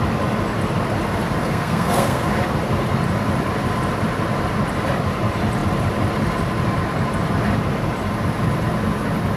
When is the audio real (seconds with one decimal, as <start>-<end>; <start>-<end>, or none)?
0.0-1.4; 2.3-9.4